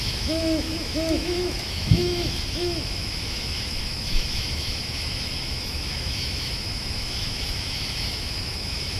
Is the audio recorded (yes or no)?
no